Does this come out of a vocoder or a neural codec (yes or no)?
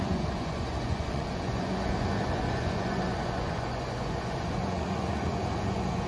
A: yes